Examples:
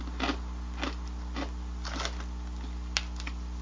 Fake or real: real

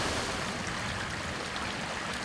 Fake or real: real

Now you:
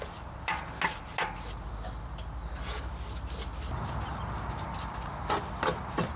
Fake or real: real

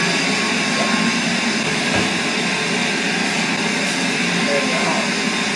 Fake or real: real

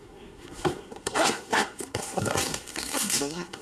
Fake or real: fake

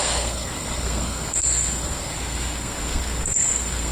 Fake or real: fake